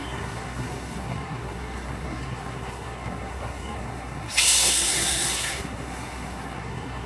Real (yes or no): no